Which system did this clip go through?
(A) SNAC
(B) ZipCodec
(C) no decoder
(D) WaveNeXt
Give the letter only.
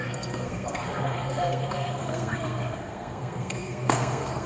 A